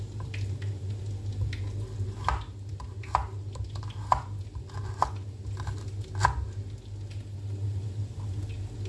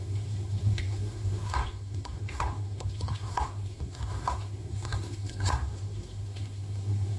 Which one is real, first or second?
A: first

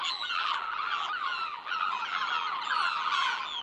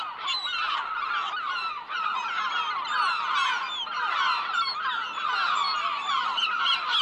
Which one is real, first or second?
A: second